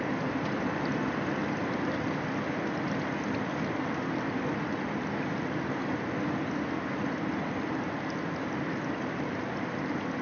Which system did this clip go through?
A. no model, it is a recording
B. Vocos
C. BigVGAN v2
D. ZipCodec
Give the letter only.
A